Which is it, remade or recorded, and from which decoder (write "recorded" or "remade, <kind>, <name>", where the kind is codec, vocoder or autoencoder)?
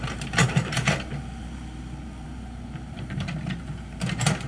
remade, vocoder, BigVGAN v2